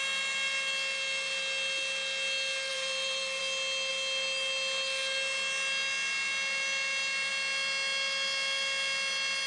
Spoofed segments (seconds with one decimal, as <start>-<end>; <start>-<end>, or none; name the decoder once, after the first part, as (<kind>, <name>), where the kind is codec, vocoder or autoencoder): 2.7-3.4 (vocoder, BigVGAN v2)